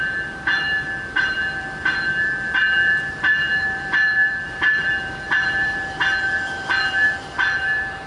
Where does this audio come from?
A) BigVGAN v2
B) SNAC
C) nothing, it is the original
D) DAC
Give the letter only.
A